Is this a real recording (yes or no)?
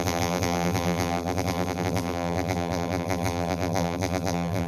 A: no